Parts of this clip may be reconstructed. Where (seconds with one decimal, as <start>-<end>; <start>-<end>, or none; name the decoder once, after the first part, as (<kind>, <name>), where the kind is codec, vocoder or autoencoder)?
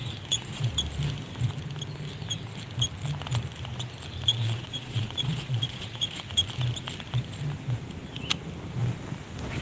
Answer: 0.0-0.7 (vocoder, Vocos); 4.3-6.3